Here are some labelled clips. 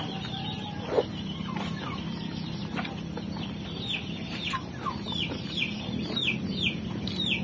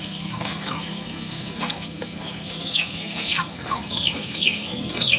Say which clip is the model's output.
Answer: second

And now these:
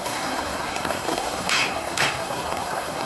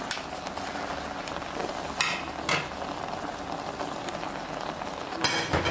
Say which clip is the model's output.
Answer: first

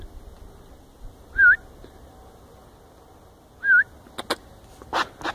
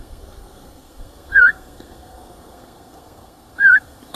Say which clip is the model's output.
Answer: second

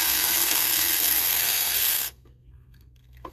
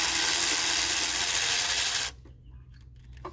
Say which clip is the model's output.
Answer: first